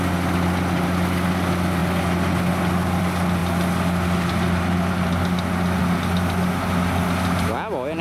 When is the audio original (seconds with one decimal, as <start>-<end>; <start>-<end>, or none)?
0.0-8.0